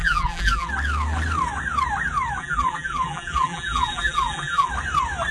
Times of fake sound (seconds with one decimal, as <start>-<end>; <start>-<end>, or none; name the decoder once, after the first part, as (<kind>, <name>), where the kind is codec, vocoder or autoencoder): 0.0-0.7 (vocoder, BigVGAN v2); 2.4-4.7